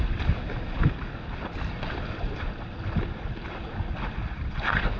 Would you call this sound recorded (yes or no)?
yes